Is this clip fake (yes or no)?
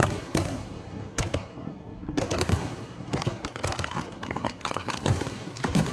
yes